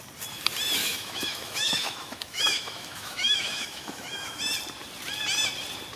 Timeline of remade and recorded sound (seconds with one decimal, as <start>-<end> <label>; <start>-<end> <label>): 0.0-0.8 recorded; 0.8-4.4 remade; 4.4-6.0 recorded